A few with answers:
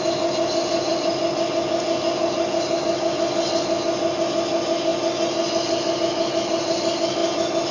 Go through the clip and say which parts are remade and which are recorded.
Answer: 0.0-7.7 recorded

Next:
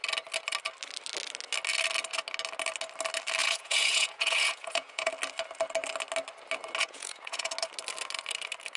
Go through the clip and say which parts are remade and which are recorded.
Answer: 0.0-3.4 recorded; 3.4-5.1 remade; 5.1-6.8 recorded; 6.8-7.5 remade; 7.5-8.8 recorded

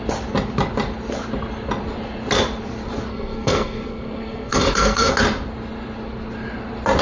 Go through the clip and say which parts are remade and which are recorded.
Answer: 0.0-3.1 recorded; 3.1-5.1 remade; 5.1-7.0 recorded

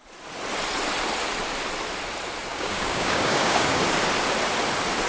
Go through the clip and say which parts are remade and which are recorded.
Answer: 0.0-2.5 recorded; 2.5-3.8 remade; 3.8-5.1 recorded